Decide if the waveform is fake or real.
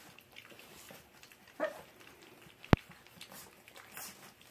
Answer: real